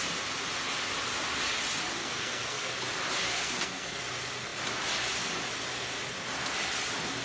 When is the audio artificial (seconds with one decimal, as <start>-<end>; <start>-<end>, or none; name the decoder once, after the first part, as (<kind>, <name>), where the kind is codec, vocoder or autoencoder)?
2.0-2.7 (codec, SNAC); 3.3-4.0